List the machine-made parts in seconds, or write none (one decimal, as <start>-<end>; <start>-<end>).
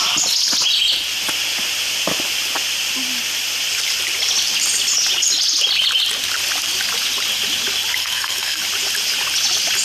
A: 8.0-8.6